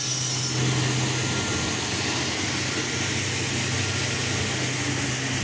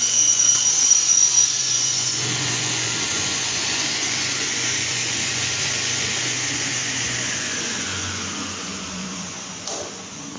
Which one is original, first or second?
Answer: first